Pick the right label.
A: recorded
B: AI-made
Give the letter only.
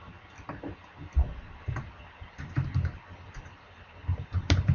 A